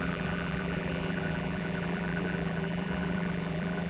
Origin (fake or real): fake